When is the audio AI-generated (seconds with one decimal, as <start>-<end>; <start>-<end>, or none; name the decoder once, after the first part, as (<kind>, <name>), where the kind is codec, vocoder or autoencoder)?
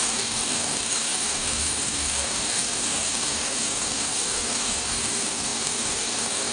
0.0-6.5 (codec, DAC)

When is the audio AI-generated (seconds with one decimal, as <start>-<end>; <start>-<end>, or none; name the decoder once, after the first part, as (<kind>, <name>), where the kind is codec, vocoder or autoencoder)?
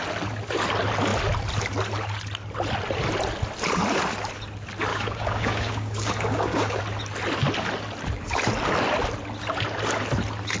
4.9-6.8 (codec, DAC)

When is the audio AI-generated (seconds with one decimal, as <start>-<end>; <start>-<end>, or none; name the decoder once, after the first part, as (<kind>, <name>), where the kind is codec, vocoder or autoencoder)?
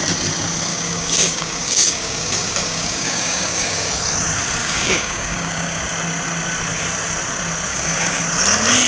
0.7-3.9 (codec, DAC); 4.6-5.8; 7.7-8.2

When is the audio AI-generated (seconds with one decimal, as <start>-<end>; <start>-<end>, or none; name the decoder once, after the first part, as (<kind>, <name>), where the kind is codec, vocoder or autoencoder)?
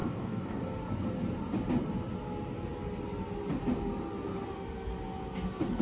0.0-0.6 (codec, DAC)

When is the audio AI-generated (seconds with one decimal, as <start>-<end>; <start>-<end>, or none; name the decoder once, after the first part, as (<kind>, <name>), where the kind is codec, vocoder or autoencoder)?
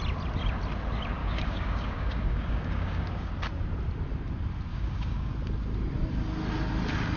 1.2-3.3 (codec, DAC); 4.7-5.3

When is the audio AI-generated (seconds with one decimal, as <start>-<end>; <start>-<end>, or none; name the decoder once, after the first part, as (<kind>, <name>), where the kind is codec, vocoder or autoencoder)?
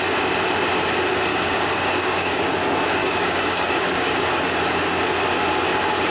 1.3-2.4 (codec, DAC); 3.0-4.3